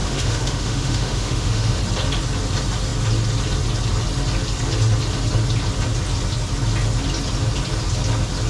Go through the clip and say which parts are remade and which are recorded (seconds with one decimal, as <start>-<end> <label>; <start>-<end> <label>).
0.0-1.8 remade; 1.8-8.5 recorded